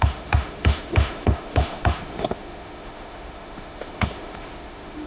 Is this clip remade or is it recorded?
remade